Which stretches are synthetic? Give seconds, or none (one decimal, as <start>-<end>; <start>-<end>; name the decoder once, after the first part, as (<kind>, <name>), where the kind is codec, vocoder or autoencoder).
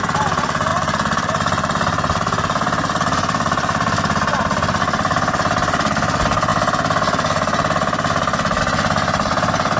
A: 0.7-4.8 (vocoder, BigVGAN v2)